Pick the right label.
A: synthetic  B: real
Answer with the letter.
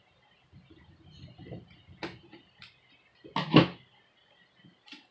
B